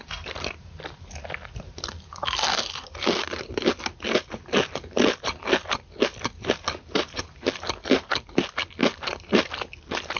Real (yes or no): yes